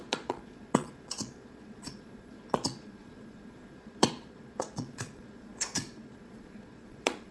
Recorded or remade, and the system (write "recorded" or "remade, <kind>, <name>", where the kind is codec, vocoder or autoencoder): remade, vocoder, Vocos